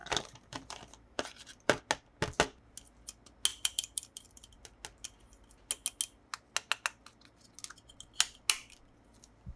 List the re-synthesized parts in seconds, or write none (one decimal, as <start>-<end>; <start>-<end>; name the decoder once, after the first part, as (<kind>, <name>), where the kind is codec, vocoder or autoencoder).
0.0-1.8 (vocoder, BigVGAN v2); 3.5-4.6